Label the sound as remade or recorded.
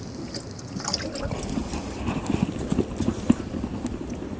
recorded